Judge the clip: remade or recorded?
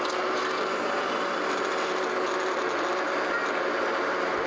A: recorded